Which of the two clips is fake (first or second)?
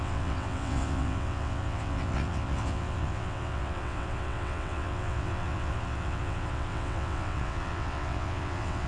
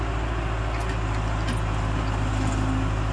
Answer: first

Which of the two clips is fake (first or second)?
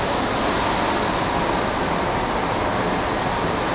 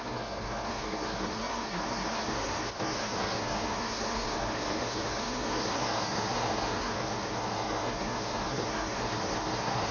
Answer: second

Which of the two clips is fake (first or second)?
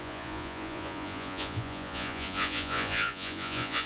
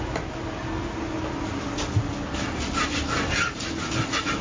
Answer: first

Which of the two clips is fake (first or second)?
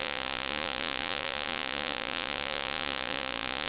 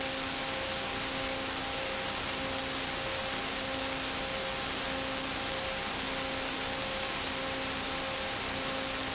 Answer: first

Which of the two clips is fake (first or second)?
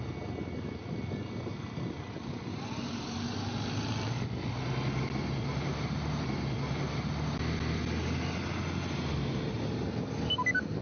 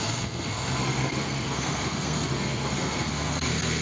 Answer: second